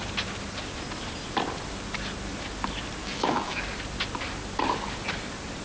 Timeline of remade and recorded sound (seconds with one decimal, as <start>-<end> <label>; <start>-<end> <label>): 0.0-3.0 recorded; 3.0-3.6 remade; 3.6-5.6 recorded